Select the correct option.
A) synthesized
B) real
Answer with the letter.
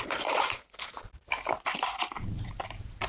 A